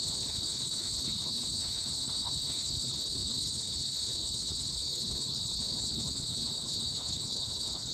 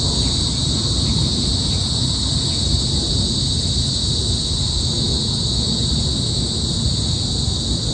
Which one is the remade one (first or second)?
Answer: first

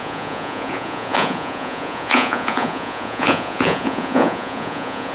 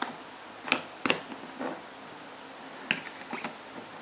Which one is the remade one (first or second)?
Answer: first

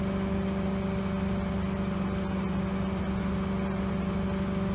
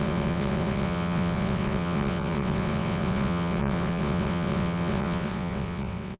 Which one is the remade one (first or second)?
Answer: second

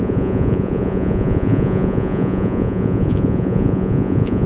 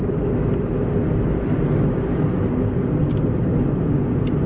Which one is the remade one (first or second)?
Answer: first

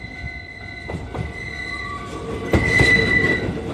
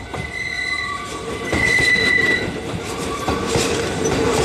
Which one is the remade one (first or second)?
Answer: second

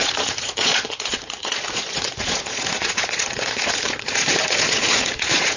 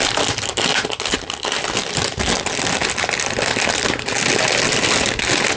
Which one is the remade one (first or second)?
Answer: first